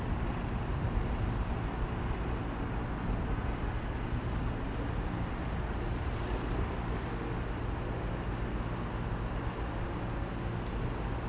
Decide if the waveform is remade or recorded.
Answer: recorded